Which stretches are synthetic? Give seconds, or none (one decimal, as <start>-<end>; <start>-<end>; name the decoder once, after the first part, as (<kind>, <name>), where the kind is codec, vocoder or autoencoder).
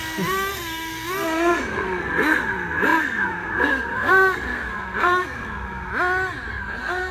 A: 0.0-5.9 (codec, SNAC); 6.5-7.1